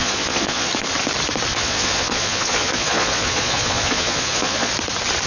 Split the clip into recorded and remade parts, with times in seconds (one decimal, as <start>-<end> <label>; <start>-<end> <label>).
0.0-0.7 remade; 0.7-1.5 recorded; 1.5-4.7 remade; 4.7-5.3 recorded